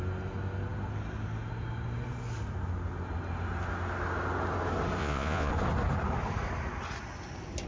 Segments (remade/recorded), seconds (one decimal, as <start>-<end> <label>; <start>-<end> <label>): 0.0-5.0 recorded; 5.0-5.5 remade; 5.5-7.7 recorded